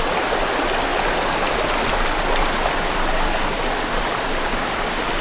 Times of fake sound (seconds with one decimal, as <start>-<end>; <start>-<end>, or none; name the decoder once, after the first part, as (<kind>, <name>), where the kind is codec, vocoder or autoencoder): none